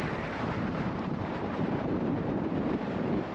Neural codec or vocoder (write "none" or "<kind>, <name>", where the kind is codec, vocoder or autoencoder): vocoder, BigVGAN v2